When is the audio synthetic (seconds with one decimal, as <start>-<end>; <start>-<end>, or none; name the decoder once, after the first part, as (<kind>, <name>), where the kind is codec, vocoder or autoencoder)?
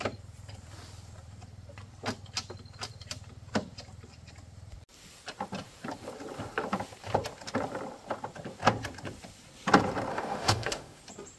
10.1-11.0 (autoencoder, DAC-VAE)